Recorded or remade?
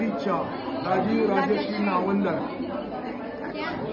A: recorded